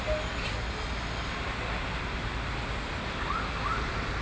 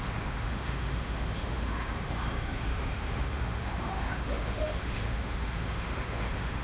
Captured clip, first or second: first